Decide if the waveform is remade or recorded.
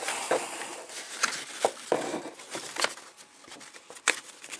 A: recorded